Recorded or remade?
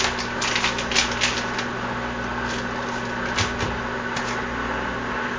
recorded